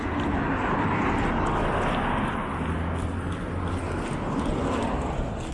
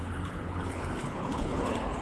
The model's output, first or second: second